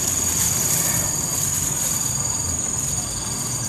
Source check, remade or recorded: recorded